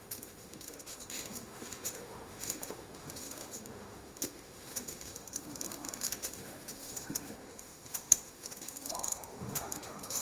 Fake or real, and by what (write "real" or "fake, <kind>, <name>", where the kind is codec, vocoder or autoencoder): fake, autoencoder, DAC-VAE